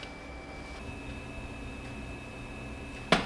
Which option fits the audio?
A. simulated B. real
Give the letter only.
B